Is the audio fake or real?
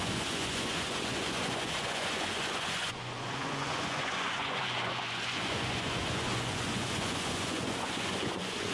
fake